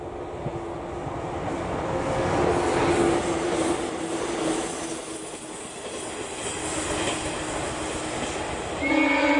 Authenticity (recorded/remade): recorded